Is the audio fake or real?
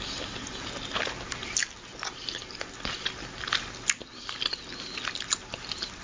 real